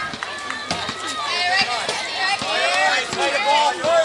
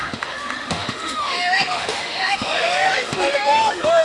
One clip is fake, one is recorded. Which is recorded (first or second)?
first